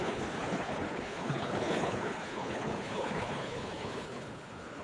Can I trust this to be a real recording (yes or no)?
no